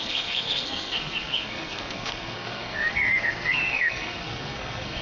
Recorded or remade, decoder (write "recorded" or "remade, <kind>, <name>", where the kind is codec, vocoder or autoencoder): remade, codec, SNAC